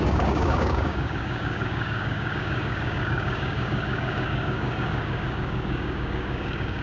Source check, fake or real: fake